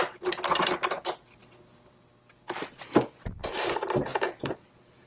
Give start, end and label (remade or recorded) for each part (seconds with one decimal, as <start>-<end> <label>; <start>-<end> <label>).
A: 0.0-4.1 recorded; 4.1-5.1 remade

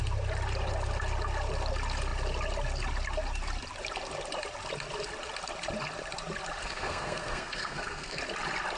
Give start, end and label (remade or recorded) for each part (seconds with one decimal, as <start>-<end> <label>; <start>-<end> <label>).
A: 0.0-6.6 recorded; 6.6-8.2 remade; 8.2-8.8 recorded